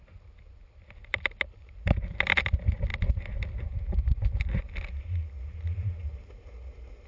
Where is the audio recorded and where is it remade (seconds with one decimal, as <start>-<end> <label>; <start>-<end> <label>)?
0.0-7.1 recorded